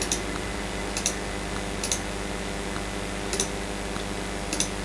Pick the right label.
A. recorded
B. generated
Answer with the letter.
A